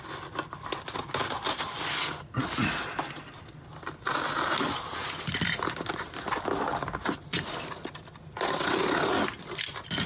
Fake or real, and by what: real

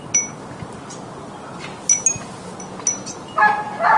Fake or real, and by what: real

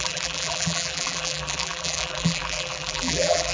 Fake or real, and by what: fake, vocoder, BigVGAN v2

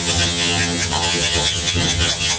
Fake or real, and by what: fake, vocoder, HiFi-GAN